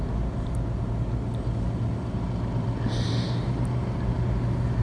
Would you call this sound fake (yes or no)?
no